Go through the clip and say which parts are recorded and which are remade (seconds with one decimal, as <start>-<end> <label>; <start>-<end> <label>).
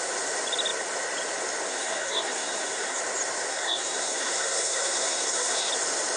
0.0-1.7 recorded; 1.7-3.0 remade; 3.0-3.5 recorded; 3.5-5.7 remade; 5.7-6.2 recorded